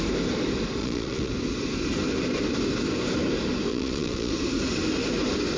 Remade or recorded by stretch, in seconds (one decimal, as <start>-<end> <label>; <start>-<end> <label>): 0.0-0.8 recorded; 0.8-1.3 remade; 1.3-3.7 recorded; 3.7-4.3 remade; 4.3-5.6 recorded

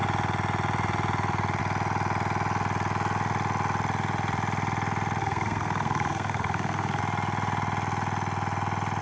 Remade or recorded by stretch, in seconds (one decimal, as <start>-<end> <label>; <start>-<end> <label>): 0.0-5.2 recorded; 5.2-7.0 remade; 7.0-9.0 recorded

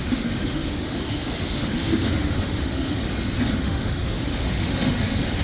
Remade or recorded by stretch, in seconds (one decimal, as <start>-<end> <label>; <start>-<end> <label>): 0.0-3.0 remade; 3.0-3.5 recorded; 3.5-5.4 remade

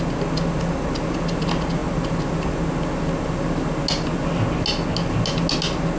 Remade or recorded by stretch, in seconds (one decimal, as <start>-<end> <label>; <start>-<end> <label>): 0.0-6.0 recorded

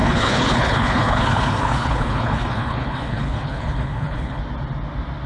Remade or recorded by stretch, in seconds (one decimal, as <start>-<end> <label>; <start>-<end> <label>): 0.0-4.4 remade; 4.4-5.3 recorded

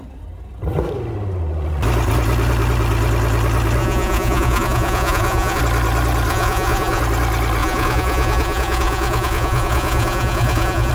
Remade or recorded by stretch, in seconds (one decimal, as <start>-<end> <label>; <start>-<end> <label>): 0.0-3.8 recorded; 3.8-5.6 remade; 5.6-6.3 recorded; 6.3-7.0 remade; 7.0-7.6 recorded; 7.6-10.9 remade